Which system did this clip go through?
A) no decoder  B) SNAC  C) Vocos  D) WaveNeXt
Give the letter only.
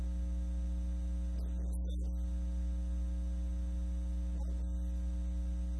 A